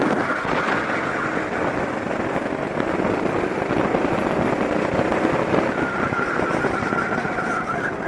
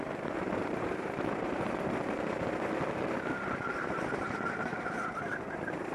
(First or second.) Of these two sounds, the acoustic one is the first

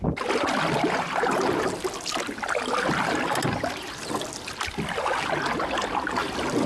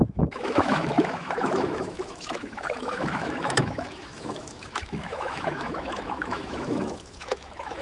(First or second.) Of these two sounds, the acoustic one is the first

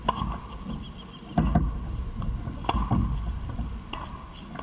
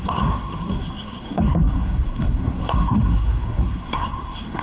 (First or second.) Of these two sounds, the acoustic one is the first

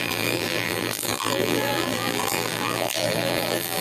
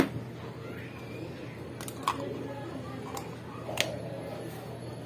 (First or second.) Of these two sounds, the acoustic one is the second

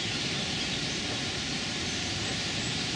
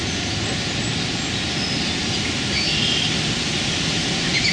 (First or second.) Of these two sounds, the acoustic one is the second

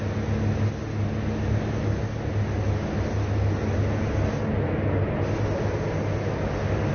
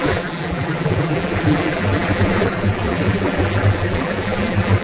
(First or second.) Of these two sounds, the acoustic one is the first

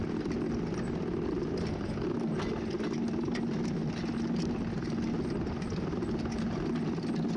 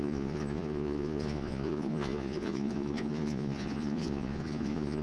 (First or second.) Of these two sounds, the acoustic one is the first